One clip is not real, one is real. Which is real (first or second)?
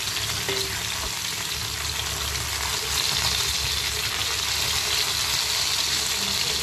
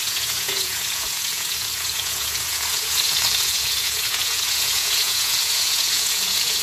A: first